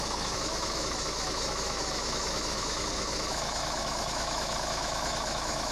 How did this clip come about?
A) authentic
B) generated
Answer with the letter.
B